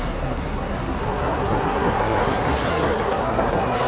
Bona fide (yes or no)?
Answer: no